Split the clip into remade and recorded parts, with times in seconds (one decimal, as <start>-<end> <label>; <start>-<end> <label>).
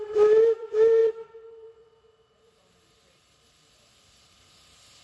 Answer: 0.0-5.0 remade